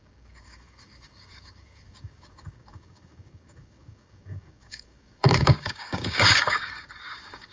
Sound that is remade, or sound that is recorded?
remade